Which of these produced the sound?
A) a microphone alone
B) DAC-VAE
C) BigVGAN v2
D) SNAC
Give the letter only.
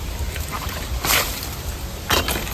A